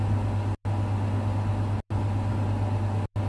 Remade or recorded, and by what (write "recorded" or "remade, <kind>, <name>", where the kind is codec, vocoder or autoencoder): recorded